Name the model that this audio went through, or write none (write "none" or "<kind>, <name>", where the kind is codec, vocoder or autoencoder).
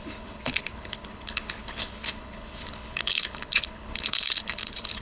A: codec, HILCodec